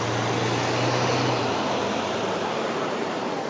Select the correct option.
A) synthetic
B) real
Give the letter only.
B